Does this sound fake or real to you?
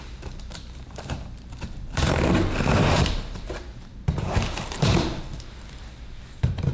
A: fake